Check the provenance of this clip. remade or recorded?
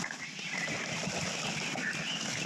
recorded